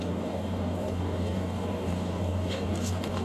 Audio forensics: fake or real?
fake